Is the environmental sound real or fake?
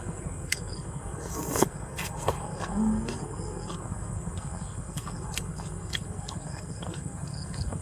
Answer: fake